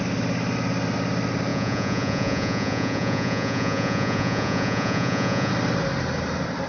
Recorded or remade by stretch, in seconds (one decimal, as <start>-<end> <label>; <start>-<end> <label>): 0.0-1.5 recorded; 1.5-5.5 remade; 5.5-6.7 recorded